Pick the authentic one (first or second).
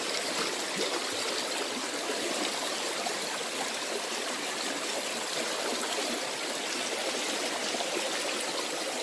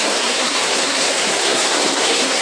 first